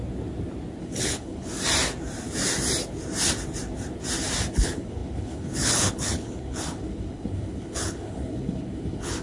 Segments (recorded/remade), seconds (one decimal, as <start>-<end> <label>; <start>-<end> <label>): 0.0-0.8 recorded; 0.8-1.5 remade; 1.5-4.5 recorded; 4.5-9.2 remade